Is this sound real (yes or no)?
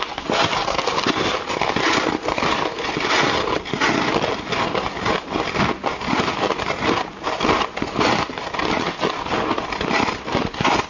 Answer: yes